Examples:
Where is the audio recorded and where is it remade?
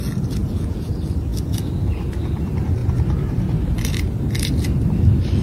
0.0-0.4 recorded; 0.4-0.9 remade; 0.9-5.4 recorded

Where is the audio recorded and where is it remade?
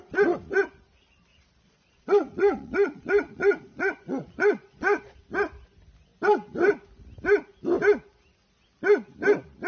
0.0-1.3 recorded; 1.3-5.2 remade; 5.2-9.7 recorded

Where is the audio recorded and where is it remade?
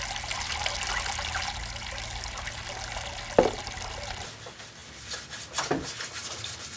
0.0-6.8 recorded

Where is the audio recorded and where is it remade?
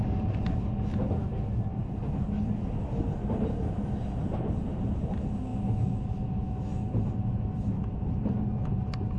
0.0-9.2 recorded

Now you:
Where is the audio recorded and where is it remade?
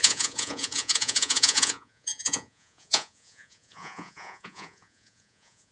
0.0-5.7 remade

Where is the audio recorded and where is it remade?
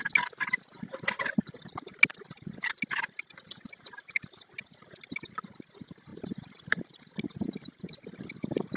0.0-8.8 recorded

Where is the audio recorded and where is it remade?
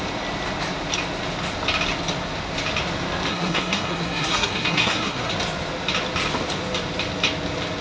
0.0-3.3 recorded; 3.3-5.3 remade; 5.3-7.8 recorded